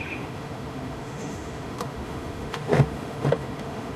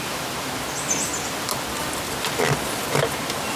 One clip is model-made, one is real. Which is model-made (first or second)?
first